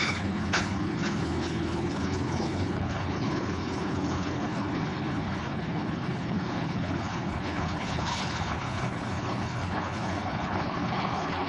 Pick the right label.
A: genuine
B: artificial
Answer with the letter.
B